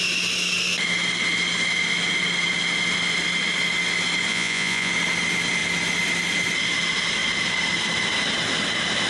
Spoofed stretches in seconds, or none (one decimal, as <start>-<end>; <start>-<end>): 4.3-4.9